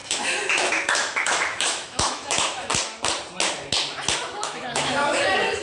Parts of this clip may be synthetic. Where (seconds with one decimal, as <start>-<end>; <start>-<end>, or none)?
0.0-2.7; 4.3-5.6